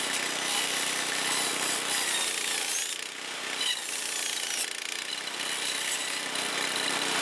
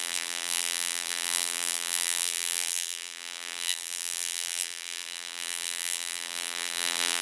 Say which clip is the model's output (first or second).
second